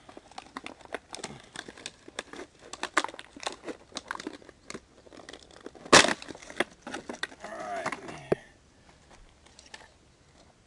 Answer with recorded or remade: recorded